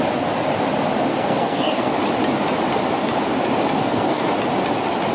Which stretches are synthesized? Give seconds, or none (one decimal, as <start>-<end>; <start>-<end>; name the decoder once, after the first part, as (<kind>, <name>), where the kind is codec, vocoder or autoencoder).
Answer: 1.1-1.9 (codec, SNAC); 3.8-4.3